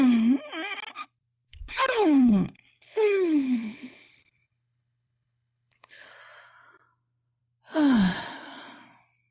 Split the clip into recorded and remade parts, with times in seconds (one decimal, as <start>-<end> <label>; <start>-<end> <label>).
0.0-1.5 recorded; 1.5-6.1 remade; 6.1-9.3 recorded